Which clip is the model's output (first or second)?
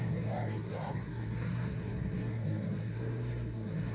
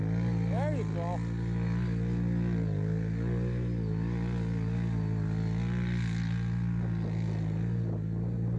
first